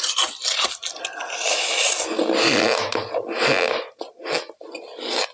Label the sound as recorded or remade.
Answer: recorded